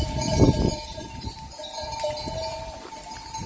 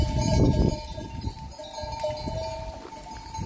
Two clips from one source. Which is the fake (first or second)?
first